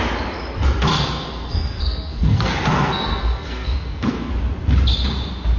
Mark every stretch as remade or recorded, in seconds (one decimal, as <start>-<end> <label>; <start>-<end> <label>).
0.0-0.9 recorded; 0.9-4.3 remade; 4.3-5.6 recorded